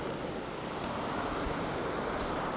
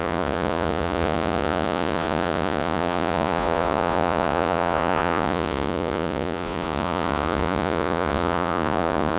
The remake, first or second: second